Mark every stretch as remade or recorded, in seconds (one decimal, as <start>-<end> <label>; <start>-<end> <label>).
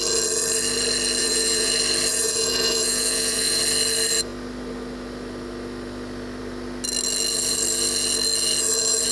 0.0-1.2 recorded; 1.2-1.7 remade; 1.7-2.1 recorded; 2.1-3.6 remade; 3.6-9.1 recorded